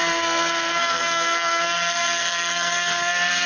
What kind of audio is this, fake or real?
fake